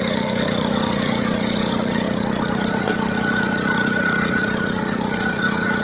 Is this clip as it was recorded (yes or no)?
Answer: no